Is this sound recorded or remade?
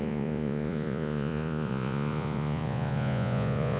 remade